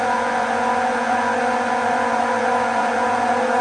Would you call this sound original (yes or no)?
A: no